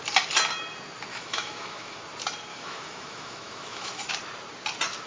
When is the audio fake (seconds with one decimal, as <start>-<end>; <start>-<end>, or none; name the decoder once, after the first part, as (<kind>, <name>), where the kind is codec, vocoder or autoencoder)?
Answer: 1.1-2.0 (autoencoder, DAC-VAE); 2.5-4.1